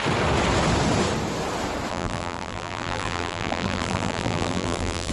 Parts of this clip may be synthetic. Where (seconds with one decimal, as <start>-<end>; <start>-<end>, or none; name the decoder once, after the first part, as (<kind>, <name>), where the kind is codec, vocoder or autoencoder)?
1.9-5.1 (vocoder, BigVGAN v2)